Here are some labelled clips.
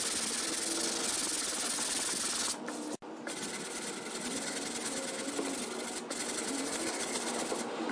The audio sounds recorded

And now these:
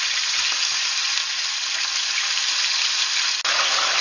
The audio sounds recorded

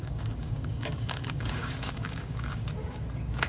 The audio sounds remade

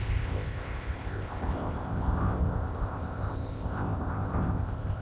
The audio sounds remade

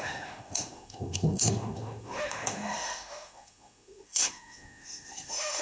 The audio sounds remade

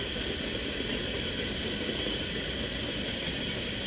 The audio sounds recorded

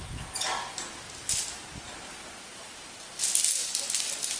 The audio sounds recorded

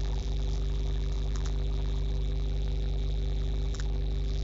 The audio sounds remade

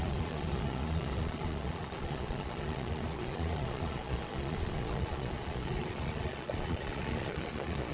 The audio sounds remade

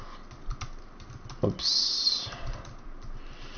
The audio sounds recorded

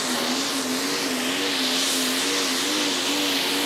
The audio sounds recorded